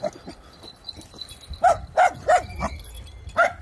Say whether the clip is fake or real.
real